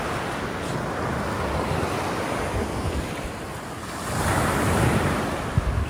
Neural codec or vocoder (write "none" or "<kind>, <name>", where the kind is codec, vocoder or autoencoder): none